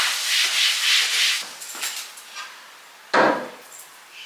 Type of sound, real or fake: real